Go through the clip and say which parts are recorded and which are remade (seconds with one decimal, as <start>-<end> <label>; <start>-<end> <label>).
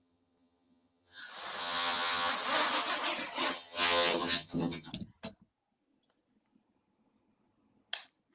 0.0-1.2 remade; 1.2-1.6 recorded; 1.6-2.3 remade; 2.3-3.5 recorded; 3.5-4.9 remade; 4.9-8.3 recorded